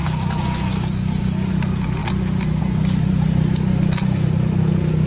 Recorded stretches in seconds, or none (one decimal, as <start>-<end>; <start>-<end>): 0.0-5.1